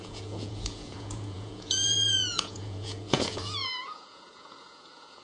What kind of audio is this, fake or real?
fake